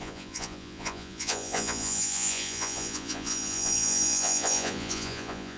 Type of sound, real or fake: fake